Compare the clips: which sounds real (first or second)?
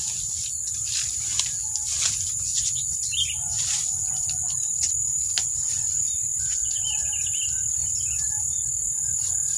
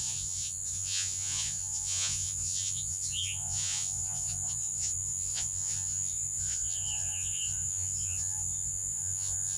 first